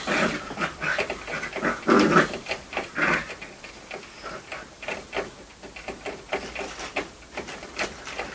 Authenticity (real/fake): real